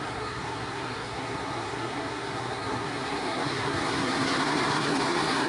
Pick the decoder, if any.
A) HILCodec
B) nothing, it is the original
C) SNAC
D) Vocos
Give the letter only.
C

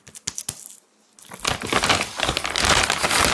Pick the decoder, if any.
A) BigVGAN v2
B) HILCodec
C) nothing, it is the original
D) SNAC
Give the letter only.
C